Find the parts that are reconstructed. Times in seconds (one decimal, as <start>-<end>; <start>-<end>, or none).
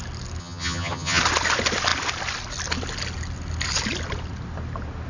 0.4-1.2